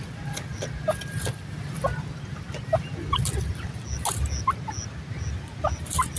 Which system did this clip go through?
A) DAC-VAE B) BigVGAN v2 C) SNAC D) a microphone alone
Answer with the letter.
D